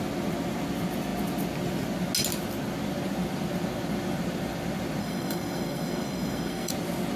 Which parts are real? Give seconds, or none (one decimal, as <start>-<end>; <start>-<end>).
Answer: 0.0-5.0; 6.7-7.2